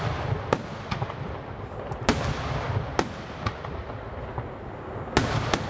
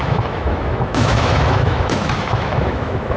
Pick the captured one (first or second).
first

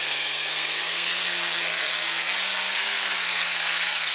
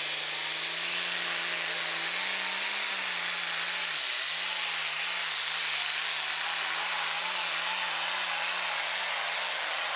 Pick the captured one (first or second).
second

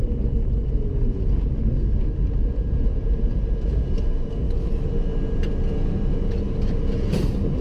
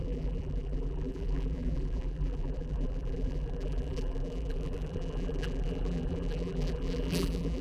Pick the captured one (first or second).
first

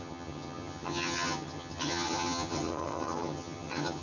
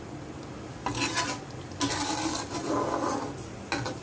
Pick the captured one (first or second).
second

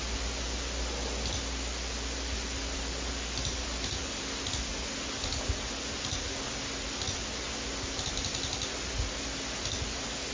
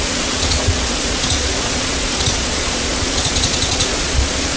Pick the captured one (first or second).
first